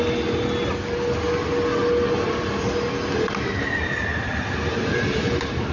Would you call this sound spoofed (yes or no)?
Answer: no